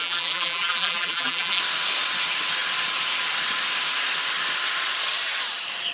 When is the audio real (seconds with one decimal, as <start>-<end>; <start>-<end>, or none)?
1.6-5.9